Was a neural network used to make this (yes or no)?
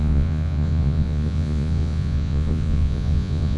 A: yes